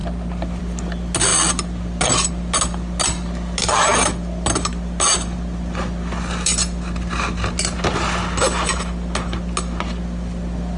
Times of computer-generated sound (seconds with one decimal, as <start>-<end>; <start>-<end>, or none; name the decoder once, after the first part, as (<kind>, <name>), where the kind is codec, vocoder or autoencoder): none